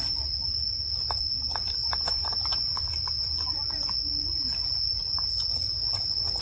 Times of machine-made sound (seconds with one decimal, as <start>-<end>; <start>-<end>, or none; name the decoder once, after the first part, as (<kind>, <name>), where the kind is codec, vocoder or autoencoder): 1.8-2.4 (vocoder, BigVGAN v2)

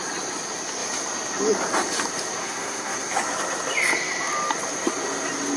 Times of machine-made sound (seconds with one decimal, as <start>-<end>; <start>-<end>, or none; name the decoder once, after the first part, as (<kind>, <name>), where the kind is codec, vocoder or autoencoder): 2.4-3.1 (codec, SNAC)

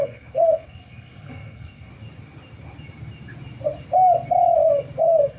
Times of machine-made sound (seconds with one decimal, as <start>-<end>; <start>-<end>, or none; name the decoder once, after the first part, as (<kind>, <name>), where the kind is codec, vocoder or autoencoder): 0.0-1.9 (codec, SNAC); 5.0-5.4

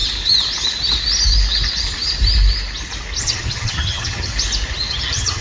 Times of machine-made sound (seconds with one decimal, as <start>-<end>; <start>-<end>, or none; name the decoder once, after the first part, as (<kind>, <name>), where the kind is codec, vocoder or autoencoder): 3.2-4.3 (vocoder, HiFi-GAN); 4.9-5.4

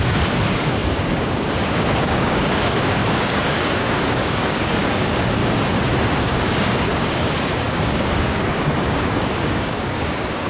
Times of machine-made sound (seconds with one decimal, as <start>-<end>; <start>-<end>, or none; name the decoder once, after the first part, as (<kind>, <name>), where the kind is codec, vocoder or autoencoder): 0.0-5.4 (codec, DAC); 6.2-10.5